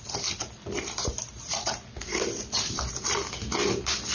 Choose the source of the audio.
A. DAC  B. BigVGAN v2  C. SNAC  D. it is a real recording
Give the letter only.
B